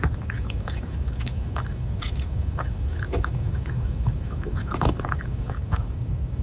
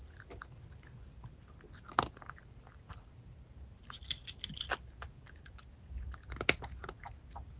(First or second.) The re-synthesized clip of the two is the first